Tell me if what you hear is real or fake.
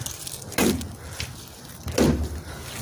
real